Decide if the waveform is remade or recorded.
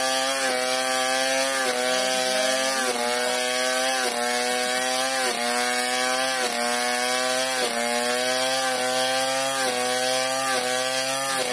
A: recorded